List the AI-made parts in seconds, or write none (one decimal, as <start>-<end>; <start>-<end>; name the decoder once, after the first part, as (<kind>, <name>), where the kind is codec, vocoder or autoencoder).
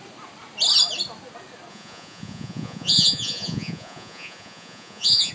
1.7-5.3 (vocoder, Vocos)